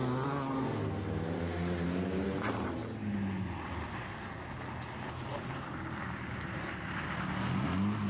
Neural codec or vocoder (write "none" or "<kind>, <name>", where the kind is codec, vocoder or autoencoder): none